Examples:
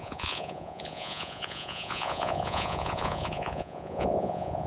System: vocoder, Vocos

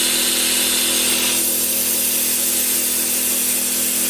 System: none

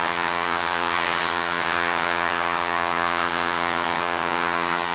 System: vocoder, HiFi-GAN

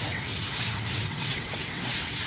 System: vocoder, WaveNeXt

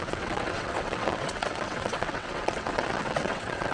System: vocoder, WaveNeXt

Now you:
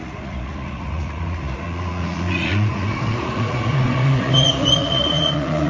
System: vocoder, Vocos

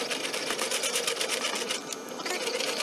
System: none